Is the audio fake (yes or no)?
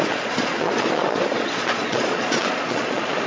yes